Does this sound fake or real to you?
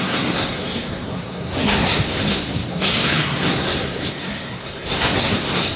fake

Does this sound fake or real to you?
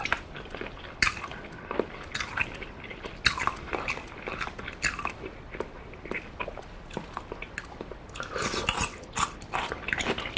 real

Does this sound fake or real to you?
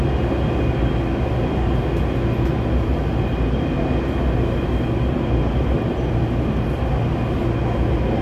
real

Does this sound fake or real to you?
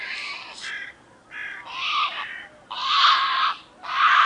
real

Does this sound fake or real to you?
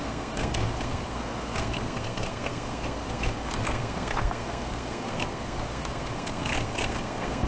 fake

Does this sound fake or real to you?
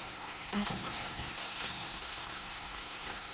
fake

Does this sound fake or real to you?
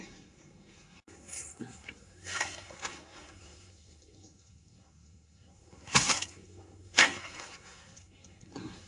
fake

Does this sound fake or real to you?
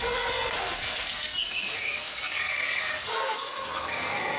fake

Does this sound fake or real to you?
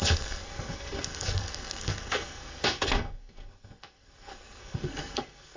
fake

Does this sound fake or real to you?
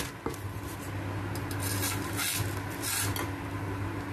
real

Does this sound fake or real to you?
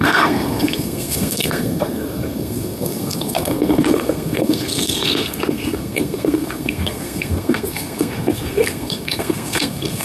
fake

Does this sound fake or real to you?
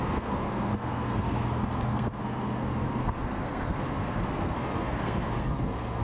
fake